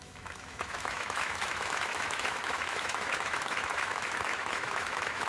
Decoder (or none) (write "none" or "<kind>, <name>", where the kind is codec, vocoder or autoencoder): autoencoder, DAC-VAE